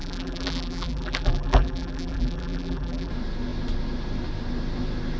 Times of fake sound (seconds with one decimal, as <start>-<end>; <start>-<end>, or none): 0.0-3.1